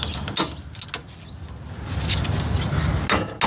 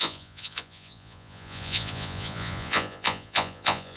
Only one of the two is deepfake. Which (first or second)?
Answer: second